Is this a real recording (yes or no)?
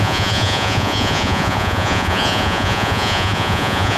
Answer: no